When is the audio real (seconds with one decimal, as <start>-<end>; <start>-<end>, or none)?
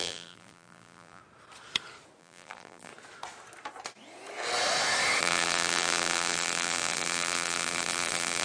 1.2-2.2; 2.9-5.2